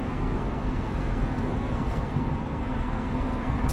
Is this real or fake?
fake